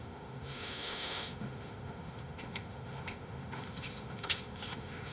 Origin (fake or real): fake